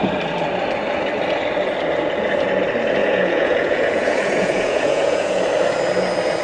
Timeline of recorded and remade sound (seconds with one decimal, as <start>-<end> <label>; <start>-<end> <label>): 0.0-3.0 recorded; 3.0-5.4 remade; 5.4-6.4 recorded